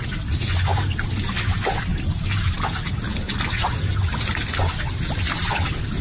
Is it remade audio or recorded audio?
recorded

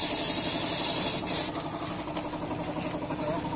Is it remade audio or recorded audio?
recorded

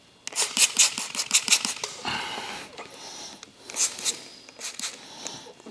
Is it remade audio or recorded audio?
recorded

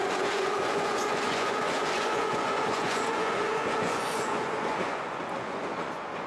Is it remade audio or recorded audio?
remade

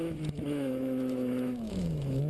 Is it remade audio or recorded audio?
remade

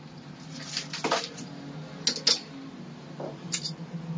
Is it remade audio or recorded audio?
recorded